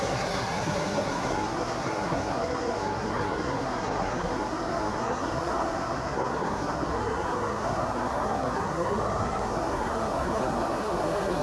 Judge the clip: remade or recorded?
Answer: remade